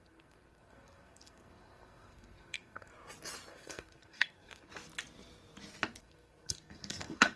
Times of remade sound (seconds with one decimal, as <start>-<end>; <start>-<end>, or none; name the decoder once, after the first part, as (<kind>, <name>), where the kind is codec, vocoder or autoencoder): 0.0-2.9 (codec, SNAC); 3.5-4.7; 6.0-7.4